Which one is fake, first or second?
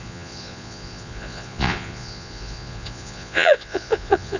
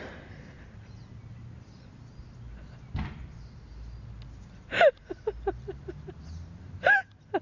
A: first